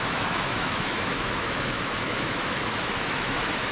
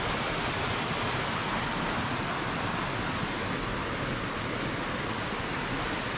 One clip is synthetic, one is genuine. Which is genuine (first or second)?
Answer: second